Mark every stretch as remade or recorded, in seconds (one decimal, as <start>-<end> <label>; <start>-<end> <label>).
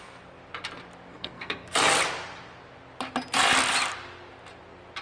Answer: 0.0-1.1 recorded; 1.1-1.8 remade; 1.8-5.0 recorded